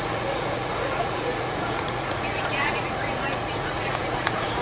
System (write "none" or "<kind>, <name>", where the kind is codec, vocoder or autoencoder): vocoder, Vocos